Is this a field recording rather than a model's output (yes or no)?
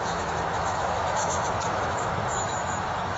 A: no